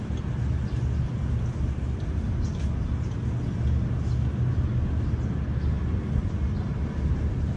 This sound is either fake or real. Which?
real